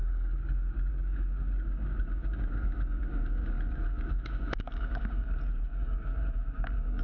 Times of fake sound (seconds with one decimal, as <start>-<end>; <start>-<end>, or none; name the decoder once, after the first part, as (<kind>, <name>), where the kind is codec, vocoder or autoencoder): 0.0-7.0 (codec, DAC)